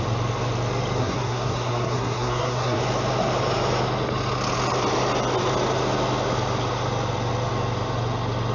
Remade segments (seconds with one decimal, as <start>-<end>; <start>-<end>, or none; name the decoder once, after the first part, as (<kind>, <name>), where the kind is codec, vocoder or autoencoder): 1.0-2.8 (codec, SNAC)